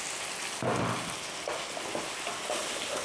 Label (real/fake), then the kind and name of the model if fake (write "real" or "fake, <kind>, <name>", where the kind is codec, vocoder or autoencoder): real